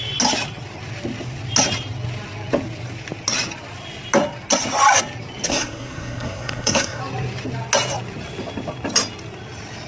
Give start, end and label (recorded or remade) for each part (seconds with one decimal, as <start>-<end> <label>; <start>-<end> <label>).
0.0-5.5 recorded; 5.5-7.0 remade; 7.0-9.9 recorded